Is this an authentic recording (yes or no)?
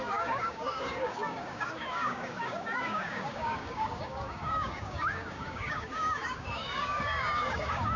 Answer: no